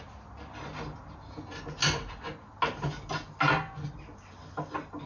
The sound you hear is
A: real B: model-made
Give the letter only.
A